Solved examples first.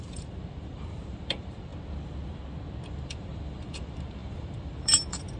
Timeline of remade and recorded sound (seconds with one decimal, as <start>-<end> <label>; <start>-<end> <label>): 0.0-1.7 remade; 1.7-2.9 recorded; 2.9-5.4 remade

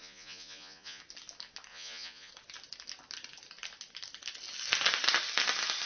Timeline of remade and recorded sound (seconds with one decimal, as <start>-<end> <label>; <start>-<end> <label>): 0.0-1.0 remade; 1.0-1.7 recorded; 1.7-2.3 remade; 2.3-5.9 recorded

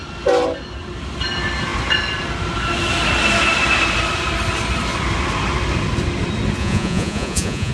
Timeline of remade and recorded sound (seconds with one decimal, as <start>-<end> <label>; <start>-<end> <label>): 0.0-6.6 recorded; 6.6-7.7 remade

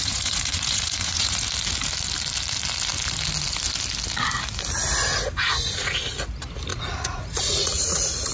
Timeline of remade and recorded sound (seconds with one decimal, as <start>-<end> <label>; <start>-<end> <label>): 0.0-1.4 remade; 1.4-6.7 recorded; 6.7-8.3 remade